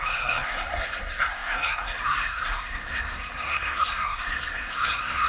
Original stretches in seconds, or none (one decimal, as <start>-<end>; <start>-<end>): none